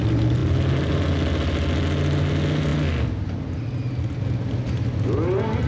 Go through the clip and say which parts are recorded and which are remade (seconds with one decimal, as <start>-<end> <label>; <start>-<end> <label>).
0.0-5.7 recorded

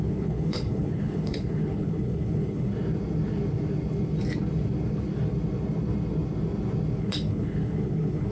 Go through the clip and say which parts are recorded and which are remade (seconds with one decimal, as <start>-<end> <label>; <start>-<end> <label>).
0.0-2.7 remade; 2.7-7.0 recorded; 7.0-8.3 remade

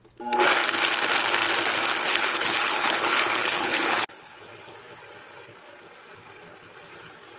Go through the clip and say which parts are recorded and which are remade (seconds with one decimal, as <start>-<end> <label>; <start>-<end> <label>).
0.0-2.0 recorded; 2.0-4.4 remade; 4.4-7.4 recorded

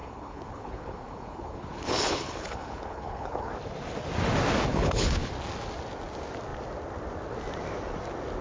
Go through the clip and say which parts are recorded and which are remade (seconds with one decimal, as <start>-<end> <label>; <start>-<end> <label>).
0.0-3.5 remade; 3.5-4.7 recorded; 4.7-5.3 remade; 5.3-8.4 recorded

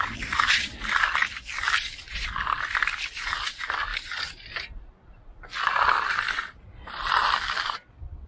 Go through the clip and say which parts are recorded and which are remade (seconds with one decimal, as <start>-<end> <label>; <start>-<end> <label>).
0.0-8.3 recorded

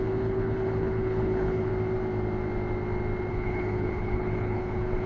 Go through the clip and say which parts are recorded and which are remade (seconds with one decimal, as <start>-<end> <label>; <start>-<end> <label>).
0.0-1.7 remade; 1.7-3.3 recorded; 3.3-5.1 remade